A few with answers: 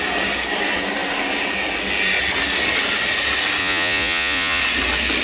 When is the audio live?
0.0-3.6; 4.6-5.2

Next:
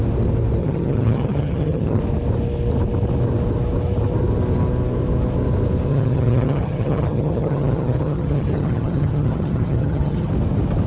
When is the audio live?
0.0-0.6; 2.0-5.9; 10.3-10.9

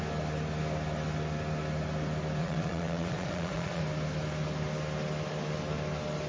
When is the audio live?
0.0-2.4; 3.8-6.3

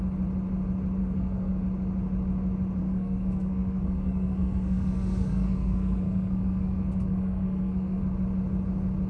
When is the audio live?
0.0-1.0; 1.6-2.8; 8.0-9.1

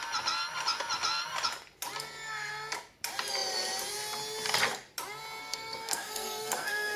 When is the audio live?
0.0-5.4

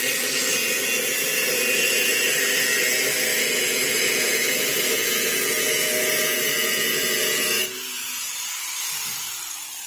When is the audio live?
0.0-3.3; 8.3-9.9

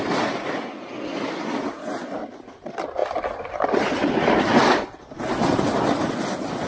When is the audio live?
0.0-6.7

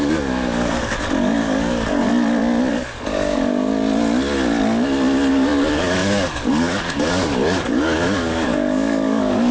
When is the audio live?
2.1-2.7; 3.7-5.3